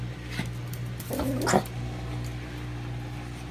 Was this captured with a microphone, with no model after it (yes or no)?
yes